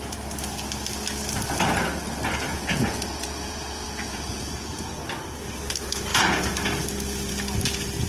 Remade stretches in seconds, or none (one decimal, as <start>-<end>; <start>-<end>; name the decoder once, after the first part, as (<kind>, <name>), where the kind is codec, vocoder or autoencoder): 2.5-4.8 (vocoder, Vocos)